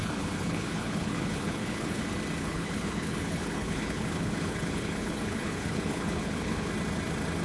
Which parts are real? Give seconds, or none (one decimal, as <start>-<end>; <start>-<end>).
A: 2.0-2.4; 6.7-7.4